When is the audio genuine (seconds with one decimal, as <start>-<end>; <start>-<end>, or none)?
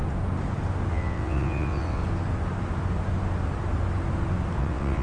0.0-0.9; 2.0-4.6